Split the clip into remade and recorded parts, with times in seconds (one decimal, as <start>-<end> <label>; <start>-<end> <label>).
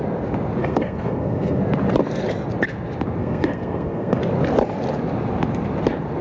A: 0.0-0.6 recorded; 0.6-1.6 remade; 1.6-3.2 recorded; 3.2-4.2 remade; 4.2-6.2 recorded